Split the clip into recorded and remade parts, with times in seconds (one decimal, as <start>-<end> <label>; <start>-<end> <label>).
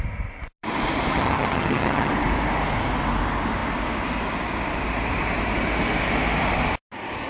0.0-1.1 recorded; 1.1-2.1 remade; 2.1-7.3 recorded